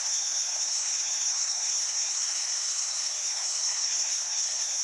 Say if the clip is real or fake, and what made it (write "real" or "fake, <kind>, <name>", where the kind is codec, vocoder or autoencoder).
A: fake, codec, SNAC